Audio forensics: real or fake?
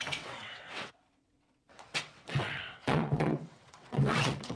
fake